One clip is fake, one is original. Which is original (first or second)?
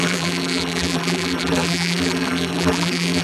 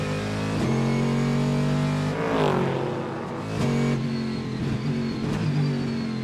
second